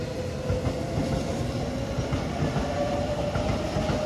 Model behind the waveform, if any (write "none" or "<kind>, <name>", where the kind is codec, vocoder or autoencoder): none